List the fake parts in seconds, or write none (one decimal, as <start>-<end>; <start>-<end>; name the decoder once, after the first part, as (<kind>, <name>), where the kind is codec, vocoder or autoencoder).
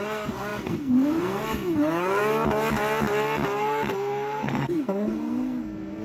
0.0-2.2 (codec, SNAC); 3.6-6.0